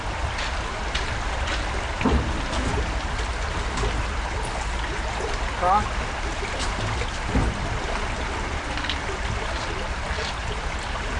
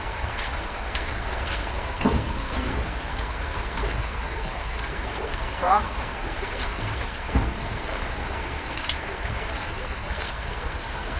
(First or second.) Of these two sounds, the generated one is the second